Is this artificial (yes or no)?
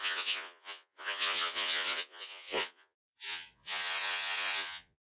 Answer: yes